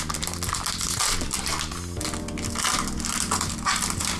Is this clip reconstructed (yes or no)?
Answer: no